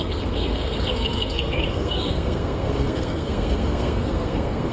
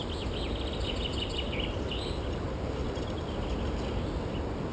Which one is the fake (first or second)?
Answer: first